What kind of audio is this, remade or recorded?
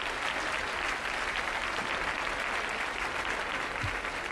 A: recorded